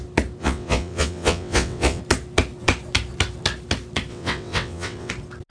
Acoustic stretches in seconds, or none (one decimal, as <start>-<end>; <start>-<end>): 0.0-0.4; 2.0-4.1; 5.1-5.5